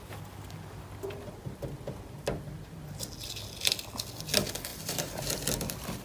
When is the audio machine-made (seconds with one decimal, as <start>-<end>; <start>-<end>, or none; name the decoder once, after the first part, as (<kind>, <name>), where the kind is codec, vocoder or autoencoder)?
4.7-6.0 (vocoder, BigVGAN v2)